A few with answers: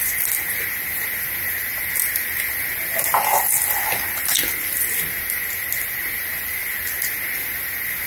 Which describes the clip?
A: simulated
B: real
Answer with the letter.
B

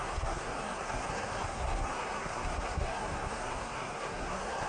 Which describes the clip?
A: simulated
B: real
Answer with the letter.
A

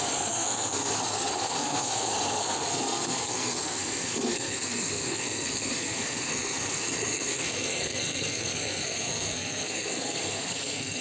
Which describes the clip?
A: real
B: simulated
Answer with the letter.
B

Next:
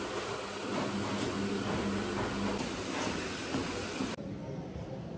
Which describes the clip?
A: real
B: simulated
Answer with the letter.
A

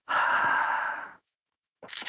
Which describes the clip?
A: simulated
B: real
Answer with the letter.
A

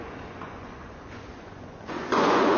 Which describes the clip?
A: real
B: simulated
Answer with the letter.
B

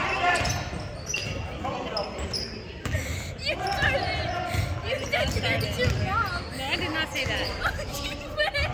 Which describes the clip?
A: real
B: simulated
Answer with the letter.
A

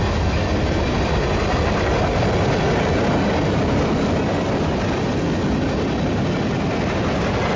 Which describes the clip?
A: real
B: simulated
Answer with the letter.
A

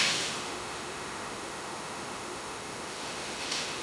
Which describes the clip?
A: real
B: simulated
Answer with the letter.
B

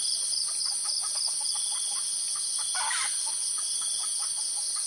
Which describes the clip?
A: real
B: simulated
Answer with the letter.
A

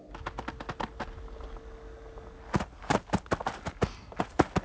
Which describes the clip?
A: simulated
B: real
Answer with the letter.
B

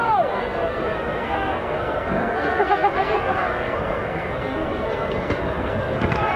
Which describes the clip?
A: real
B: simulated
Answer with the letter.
B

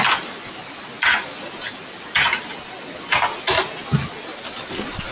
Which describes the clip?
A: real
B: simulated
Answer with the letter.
A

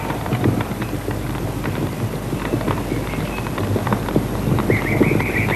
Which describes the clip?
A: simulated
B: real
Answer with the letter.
B